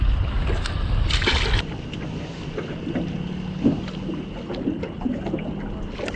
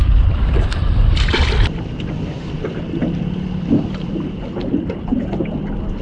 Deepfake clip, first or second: second